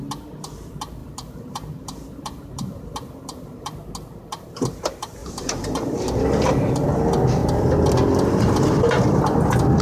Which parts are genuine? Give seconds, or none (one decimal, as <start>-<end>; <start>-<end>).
0.0-1.0; 3.9-5.2; 6.7-7.4